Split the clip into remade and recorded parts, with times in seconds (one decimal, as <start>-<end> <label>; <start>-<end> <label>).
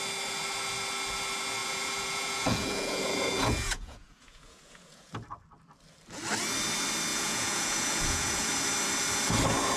0.0-1.6 recorded; 1.6-5.1 remade; 5.1-7.1 recorded; 7.1-8.5 remade; 8.5-9.8 recorded